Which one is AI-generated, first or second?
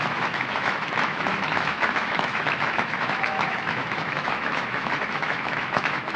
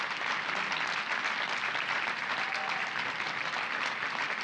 first